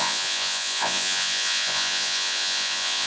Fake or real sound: fake